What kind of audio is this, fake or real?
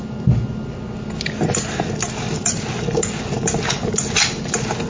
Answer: real